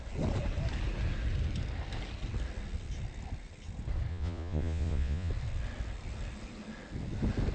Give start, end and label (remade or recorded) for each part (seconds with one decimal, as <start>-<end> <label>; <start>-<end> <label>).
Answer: 0.0-4.1 recorded; 4.1-5.3 remade; 5.3-7.5 recorded